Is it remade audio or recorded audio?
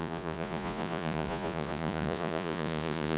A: remade